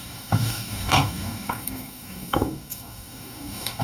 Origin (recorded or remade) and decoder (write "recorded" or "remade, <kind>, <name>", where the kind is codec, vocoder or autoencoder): remade, codec, DAC